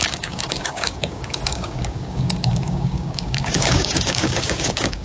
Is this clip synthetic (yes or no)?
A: yes